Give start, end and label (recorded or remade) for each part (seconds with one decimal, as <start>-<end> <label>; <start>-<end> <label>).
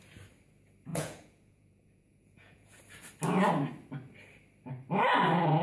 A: 0.0-0.9 recorded; 0.9-2.8 remade; 2.8-5.6 recorded